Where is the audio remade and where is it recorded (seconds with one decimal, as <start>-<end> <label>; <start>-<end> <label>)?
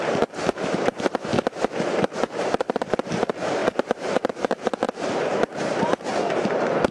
0.0-1.3 remade; 1.3-1.8 recorded; 1.8-6.9 remade